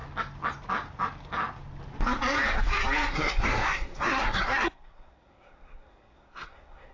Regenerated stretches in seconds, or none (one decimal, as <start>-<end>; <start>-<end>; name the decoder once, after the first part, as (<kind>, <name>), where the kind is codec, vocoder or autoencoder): 3.1-6.9 (codec, SNAC)